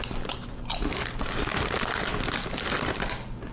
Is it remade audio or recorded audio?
recorded